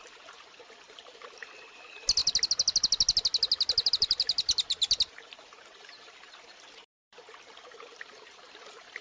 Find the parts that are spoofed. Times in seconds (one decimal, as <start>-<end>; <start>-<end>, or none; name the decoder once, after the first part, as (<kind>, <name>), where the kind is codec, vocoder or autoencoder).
0.0-2.2 (vocoder, BigVGAN v2); 3.9-9.0